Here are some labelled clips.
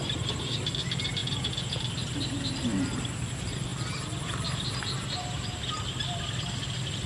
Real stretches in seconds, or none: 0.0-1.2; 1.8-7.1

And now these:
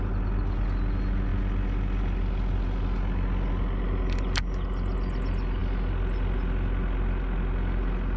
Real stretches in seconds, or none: 0.0-8.2

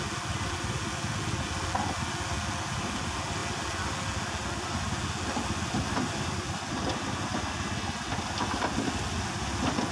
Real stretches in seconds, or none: 0.0-9.9